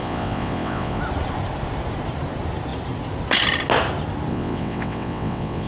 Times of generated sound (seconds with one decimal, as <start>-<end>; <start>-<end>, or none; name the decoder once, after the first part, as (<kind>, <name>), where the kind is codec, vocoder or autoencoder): 0.0-1.0 (vocoder, WaveNeXt); 4.3-5.7